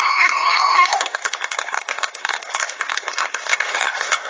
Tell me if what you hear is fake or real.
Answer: fake